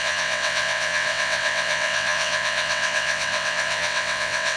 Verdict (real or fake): fake